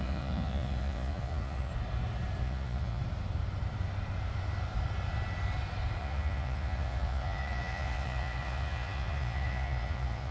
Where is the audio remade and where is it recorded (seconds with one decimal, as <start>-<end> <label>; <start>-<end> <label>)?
0.0-1.7 remade; 1.7-2.4 recorded; 2.4-3.0 remade; 3.0-6.0 recorded; 6.0-10.3 remade